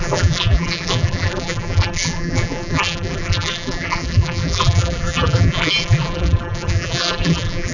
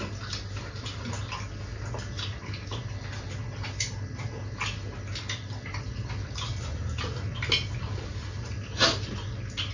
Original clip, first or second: second